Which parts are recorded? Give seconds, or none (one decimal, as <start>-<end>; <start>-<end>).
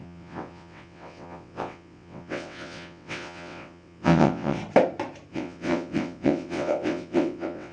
4.6-5.3